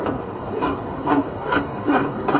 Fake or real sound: fake